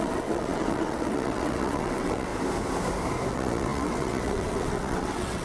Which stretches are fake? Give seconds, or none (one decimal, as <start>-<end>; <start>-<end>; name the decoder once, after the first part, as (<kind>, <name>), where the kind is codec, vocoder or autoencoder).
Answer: 0.0-2.3 (vocoder, WaveNeXt); 3.3-5.4